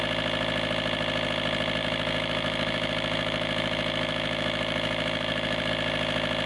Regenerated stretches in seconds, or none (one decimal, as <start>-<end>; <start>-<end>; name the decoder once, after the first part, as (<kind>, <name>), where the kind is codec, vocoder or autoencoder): 1.8-5.7 (autoencoder, DAC-VAE)